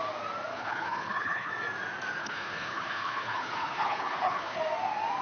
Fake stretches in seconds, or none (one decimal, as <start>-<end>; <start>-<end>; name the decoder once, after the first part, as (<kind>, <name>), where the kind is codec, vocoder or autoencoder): 0.5-1.5 (codec, HILCodec); 2.2-4.6